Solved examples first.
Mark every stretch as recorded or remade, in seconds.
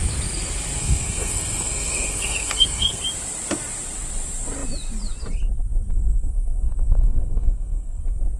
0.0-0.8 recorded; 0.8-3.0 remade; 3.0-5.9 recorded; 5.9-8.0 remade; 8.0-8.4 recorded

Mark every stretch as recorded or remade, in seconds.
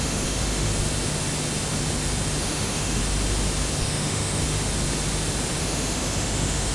0.0-0.7 remade; 0.7-2.4 recorded; 2.4-3.0 remade; 3.0-3.8 recorded; 3.8-4.4 remade; 4.4-5.6 recorded; 5.6-6.7 remade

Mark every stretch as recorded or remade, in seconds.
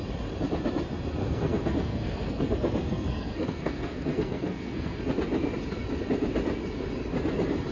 0.0-1.2 recorded; 1.2-5.0 remade; 5.0-7.7 recorded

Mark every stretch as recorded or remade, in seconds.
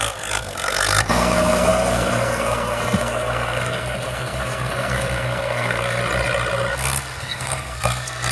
0.0-6.0 remade; 6.0-6.7 recorded; 6.7-8.3 remade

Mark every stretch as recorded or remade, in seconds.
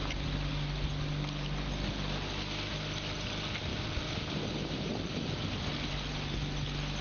0.0-7.0 recorded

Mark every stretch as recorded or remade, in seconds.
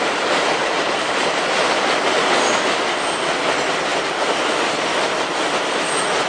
0.0-0.6 recorded; 0.6-1.6 remade; 1.6-3.9 recorded; 3.9-5.8 remade; 5.8-6.3 recorded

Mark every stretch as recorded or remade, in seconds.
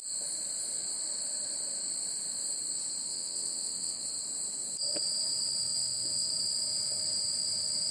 0.0-3.1 recorded; 3.1-4.0 remade; 4.0-5.7 recorded; 5.7-6.3 remade; 6.3-7.9 recorded